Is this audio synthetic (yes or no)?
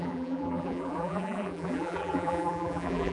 yes